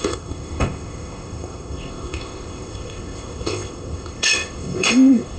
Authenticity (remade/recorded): remade